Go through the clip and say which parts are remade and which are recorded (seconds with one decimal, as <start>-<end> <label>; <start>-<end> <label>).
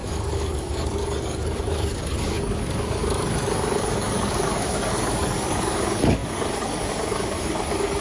0.0-8.0 remade